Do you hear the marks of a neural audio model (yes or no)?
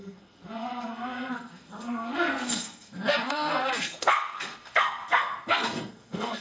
yes